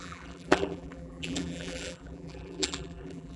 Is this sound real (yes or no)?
no